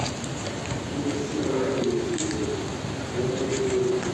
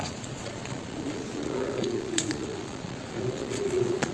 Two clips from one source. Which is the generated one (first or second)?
second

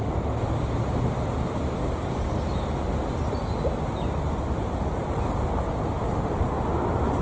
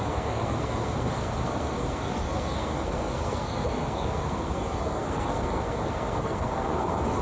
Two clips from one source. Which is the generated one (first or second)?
second